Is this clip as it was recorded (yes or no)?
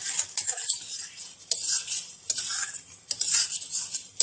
yes